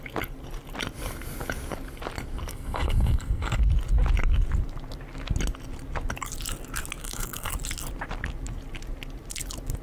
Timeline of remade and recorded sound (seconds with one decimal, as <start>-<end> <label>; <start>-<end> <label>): 0.0-2.5 recorded; 2.5-3.6 remade; 3.6-7.0 recorded; 7.0-7.5 remade; 7.5-9.8 recorded